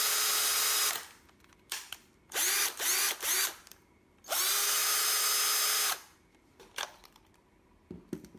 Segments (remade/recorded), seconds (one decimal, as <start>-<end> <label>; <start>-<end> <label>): 0.0-8.4 recorded